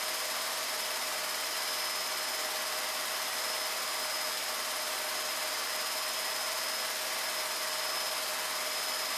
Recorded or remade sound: recorded